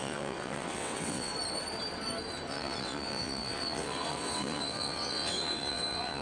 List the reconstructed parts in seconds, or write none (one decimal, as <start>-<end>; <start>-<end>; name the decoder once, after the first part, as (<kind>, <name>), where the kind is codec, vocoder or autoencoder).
0.0-1.3 (vocoder, WaveNeXt); 2.5-6.2